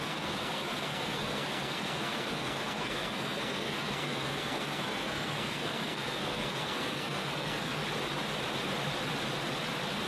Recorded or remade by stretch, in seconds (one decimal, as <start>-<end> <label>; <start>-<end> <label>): 0.0-7.8 remade; 7.8-10.1 recorded